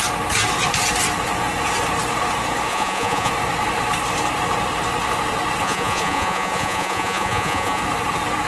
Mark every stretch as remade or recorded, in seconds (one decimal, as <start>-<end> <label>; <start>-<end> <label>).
0.0-2.7 recorded; 2.7-3.3 remade; 3.3-5.6 recorded; 5.6-7.8 remade; 7.8-8.5 recorded